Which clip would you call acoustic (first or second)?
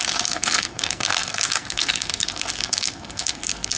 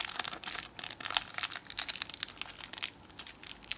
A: second